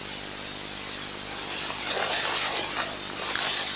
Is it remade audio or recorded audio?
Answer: recorded